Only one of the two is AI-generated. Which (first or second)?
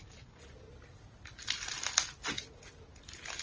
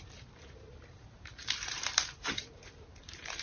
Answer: second